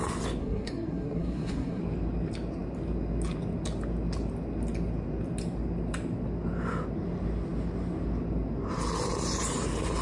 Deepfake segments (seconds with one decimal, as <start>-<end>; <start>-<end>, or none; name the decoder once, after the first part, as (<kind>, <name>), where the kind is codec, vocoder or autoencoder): 0.4-1.8 (codec, SNAC)